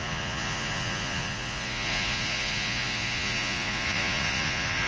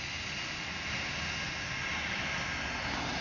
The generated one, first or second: first